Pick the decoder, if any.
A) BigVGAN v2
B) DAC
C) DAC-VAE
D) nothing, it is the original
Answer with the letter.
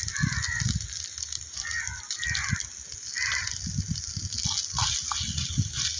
D